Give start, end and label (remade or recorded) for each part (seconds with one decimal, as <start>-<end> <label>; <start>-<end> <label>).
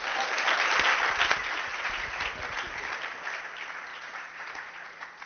0.0-1.4 recorded; 1.4-2.2 remade; 2.2-3.9 recorded; 3.9-5.3 remade